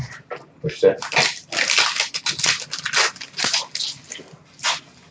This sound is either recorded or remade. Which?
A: recorded